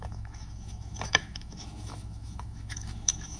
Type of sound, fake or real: fake